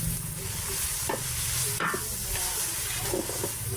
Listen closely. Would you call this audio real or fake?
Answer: real